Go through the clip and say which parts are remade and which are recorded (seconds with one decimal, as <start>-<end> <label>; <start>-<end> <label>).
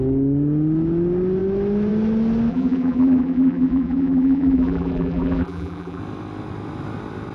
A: 0.0-2.5 recorded; 2.5-6.0 remade; 6.0-7.3 recorded